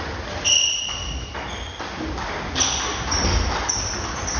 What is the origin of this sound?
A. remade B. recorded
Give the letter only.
B